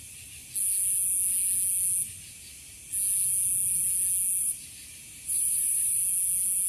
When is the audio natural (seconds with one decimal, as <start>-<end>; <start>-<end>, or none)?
0.4-4.4; 6.0-6.7